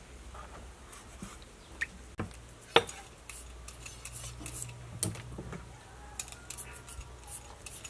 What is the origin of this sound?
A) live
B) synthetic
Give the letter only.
A